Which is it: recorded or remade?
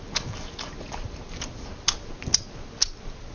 recorded